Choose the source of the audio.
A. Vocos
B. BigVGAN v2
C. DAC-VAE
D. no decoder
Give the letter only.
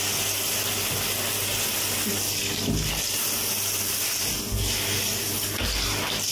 D